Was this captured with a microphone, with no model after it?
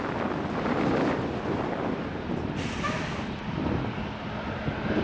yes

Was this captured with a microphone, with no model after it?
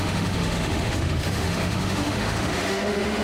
no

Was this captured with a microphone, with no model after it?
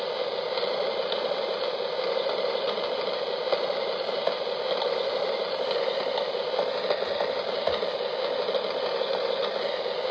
yes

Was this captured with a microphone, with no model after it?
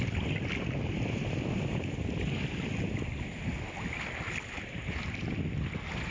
yes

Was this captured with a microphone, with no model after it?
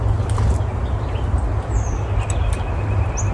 yes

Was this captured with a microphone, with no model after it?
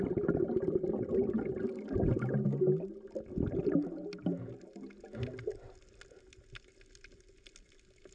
yes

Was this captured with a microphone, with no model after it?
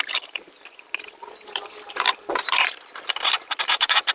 no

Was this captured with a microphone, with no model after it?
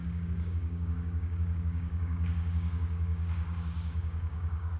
no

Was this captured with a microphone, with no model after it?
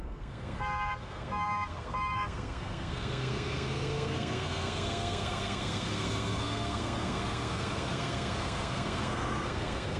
no